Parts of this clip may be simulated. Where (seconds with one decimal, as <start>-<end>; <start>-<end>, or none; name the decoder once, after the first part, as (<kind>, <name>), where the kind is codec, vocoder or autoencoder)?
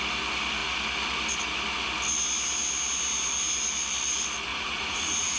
4.5-5.4 (vocoder, Vocos)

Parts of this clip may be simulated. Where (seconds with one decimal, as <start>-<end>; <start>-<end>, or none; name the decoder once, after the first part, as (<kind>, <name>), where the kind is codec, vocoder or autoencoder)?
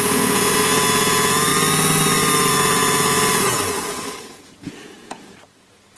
0.0-1.5 (vocoder, Vocos); 2.5-6.0